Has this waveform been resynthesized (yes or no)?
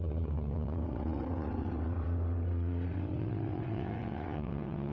yes